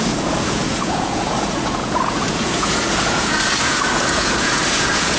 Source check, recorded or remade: remade